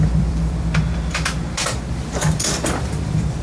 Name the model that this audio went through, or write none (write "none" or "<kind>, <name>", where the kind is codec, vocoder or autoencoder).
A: vocoder, BigVGAN v2